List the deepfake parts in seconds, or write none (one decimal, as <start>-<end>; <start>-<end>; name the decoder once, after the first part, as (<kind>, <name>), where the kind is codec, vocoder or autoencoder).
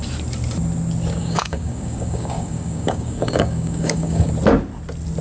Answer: 1.2-4.3 (codec, DAC)